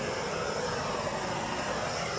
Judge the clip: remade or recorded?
recorded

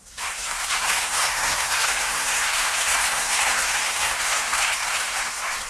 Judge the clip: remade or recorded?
remade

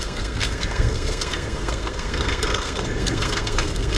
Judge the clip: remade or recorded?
remade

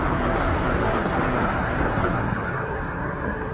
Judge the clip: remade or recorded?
remade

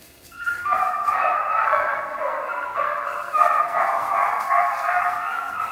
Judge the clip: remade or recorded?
remade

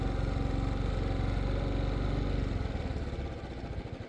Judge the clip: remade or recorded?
recorded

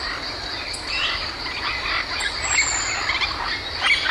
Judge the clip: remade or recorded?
recorded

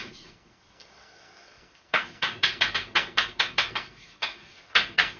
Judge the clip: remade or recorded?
remade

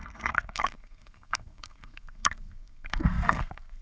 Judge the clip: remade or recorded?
remade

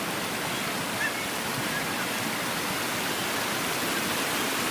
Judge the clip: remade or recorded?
recorded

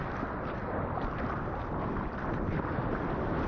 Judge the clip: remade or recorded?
recorded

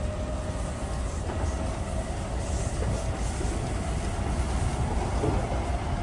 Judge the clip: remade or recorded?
recorded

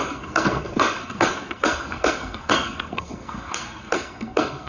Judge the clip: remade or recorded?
remade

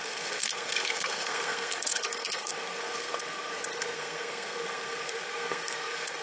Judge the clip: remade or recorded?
remade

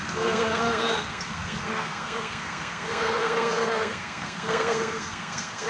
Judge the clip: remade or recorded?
remade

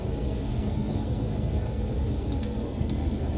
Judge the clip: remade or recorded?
remade